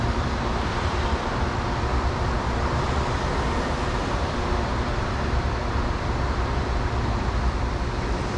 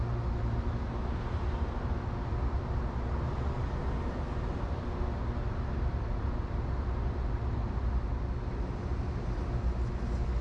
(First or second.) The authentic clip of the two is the second